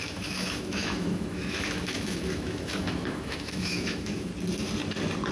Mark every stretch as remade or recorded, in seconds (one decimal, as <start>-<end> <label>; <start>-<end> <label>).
0.0-4.3 remade; 4.3-5.3 recorded